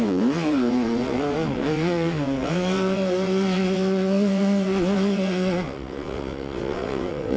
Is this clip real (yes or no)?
no